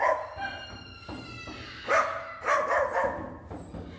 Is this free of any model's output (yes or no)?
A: yes